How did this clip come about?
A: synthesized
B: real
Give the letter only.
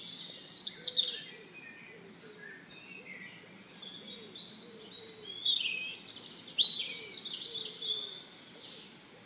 B